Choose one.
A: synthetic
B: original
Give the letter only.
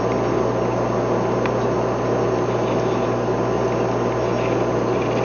B